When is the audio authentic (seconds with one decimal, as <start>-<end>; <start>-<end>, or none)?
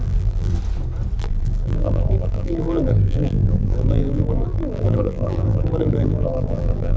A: 0.5-1.2